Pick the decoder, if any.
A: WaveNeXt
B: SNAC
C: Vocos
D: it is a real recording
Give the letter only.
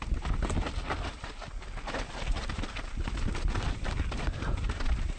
D